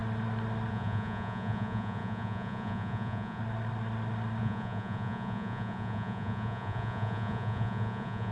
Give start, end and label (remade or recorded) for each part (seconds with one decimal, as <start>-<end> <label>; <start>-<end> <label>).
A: 0.0-0.7 recorded; 0.7-3.4 remade; 3.4-4.4 recorded; 4.4-8.3 remade